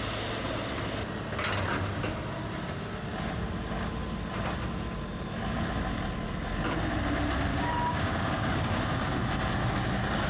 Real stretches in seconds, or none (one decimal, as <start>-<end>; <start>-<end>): 0.0-7.5; 8.8-10.3